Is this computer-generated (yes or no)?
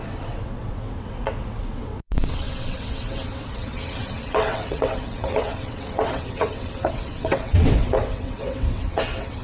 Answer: yes